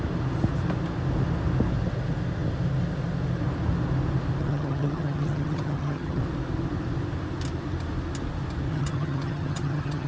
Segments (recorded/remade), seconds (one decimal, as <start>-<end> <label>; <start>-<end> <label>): 0.0-4.4 recorded; 4.4-6.2 remade; 6.2-8.7 recorded; 8.7-10.1 remade

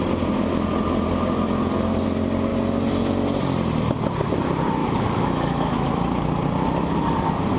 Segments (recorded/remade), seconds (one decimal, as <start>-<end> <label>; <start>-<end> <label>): 0.0-4.8 recorded; 4.8-6.0 remade; 6.0-7.6 recorded

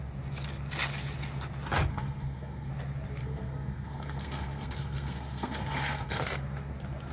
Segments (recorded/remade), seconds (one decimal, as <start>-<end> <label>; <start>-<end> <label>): 0.0-1.9 recorded; 1.9-2.7 remade; 2.7-3.2 recorded; 3.2-6.2 remade; 6.2-7.1 recorded

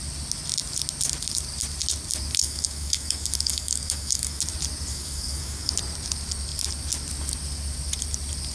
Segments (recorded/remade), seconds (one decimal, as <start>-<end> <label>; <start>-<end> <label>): 0.0-2.4 recorded; 2.4-4.4 remade; 4.4-4.9 recorded; 4.9-5.7 remade; 5.7-8.5 recorded